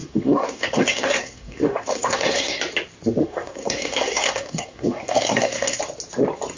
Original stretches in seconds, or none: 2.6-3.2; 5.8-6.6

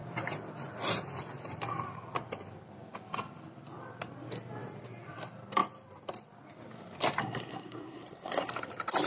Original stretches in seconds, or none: 0.0-7.2; 8.6-9.1

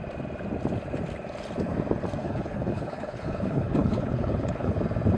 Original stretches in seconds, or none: 0.0-2.2; 4.8-5.2

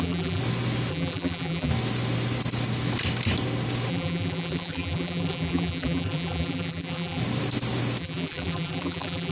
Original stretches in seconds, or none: 0.4-0.9; 1.7-3.9; 7.2-8.0

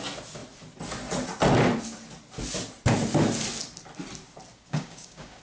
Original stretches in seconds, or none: 0.0-4.5

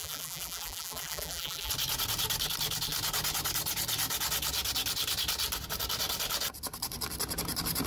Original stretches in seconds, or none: 1.7-7.9

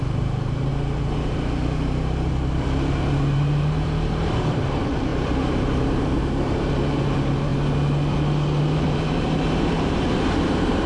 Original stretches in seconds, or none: 0.7-2.5; 7.5-8.6